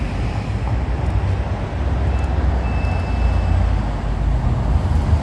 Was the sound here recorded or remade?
recorded